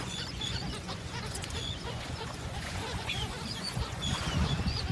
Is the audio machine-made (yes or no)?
yes